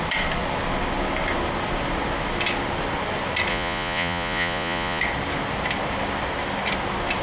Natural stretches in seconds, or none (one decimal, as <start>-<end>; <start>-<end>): 0.0-3.5; 5.0-7.2